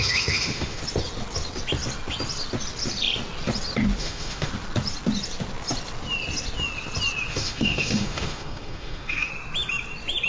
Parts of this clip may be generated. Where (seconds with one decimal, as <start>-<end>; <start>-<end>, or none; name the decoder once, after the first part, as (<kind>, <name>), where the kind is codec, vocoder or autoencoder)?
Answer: 0.0-0.8 (autoencoder, DAC-VAE); 4.0-4.5; 7.3-9.3